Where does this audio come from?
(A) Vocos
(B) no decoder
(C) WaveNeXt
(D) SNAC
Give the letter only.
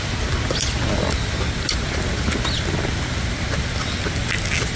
B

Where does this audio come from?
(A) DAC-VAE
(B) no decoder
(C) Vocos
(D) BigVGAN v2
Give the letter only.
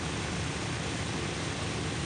B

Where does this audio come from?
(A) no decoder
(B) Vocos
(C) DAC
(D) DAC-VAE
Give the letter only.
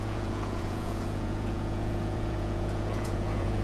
B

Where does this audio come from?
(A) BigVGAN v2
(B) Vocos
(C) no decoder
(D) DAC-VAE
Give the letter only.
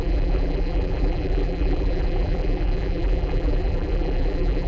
A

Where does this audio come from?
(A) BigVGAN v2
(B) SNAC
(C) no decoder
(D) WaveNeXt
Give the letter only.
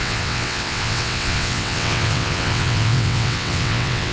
D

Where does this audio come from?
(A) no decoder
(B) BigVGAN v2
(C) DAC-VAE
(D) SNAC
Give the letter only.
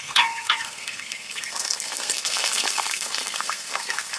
D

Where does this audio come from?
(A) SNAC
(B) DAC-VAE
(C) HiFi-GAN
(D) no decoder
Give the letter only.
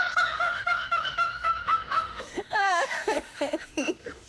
B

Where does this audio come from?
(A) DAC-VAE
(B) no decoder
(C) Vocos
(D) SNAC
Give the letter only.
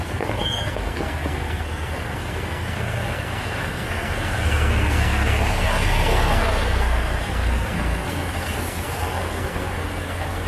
D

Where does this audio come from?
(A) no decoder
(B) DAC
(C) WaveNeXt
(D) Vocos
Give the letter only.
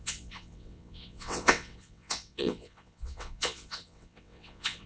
C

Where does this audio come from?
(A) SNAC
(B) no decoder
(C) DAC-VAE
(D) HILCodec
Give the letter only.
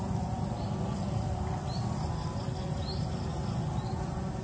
B